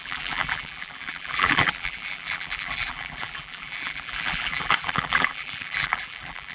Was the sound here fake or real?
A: fake